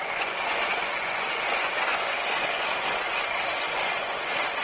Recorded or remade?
remade